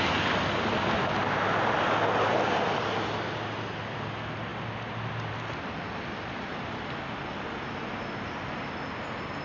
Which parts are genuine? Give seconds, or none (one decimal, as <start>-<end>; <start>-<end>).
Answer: 0.0-9.4